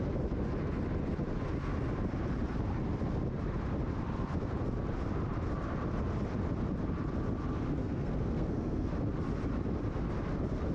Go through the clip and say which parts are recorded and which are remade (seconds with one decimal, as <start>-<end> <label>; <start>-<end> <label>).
0.0-7.8 recorded; 7.8-8.9 remade; 8.9-10.7 recorded

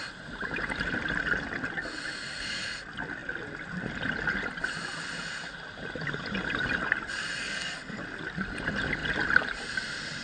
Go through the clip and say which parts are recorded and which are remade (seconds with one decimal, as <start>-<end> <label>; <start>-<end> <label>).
0.0-7.4 recorded; 7.4-8.0 remade; 8.0-10.2 recorded

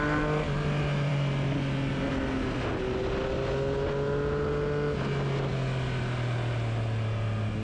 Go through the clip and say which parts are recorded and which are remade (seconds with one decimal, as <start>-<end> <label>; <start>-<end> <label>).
0.0-7.6 recorded

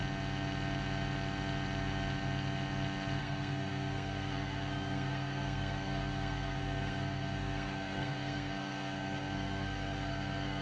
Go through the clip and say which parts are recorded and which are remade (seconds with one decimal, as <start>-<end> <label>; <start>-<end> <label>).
0.0-3.2 recorded; 3.2-10.6 remade

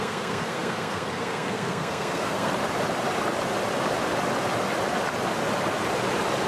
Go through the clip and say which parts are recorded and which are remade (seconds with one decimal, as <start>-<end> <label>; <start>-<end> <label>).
0.0-2.5 remade; 2.5-6.5 recorded

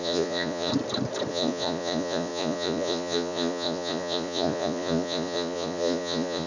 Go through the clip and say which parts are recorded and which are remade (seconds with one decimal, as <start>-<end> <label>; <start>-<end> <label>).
0.0-0.7 remade; 0.7-1.3 recorded; 1.3-6.5 remade

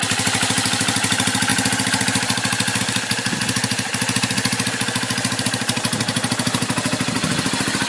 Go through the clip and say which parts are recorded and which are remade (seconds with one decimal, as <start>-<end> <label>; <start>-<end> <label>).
0.0-7.9 recorded

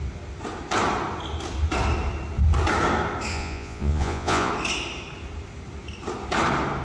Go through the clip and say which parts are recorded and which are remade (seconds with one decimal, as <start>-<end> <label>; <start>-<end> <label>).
0.0-3.3 recorded; 3.3-4.5 remade; 4.5-6.8 recorded